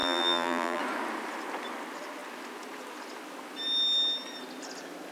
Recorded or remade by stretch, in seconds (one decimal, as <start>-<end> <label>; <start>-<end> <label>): 0.0-0.8 remade; 0.8-5.1 recorded